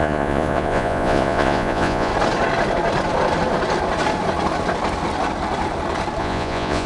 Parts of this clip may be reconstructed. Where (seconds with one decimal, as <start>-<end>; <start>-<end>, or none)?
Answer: 0.0-2.1; 6.2-6.9